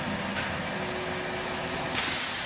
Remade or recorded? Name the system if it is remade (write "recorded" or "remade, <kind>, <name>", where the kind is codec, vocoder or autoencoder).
recorded